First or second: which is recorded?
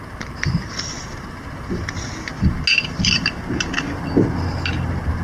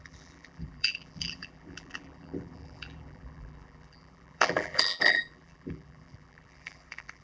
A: first